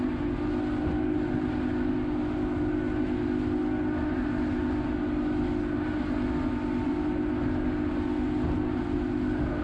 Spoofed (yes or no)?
no